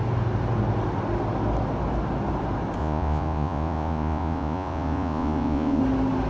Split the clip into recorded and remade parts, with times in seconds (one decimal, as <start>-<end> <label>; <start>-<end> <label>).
0.0-2.8 recorded; 2.8-5.8 remade; 5.8-6.3 recorded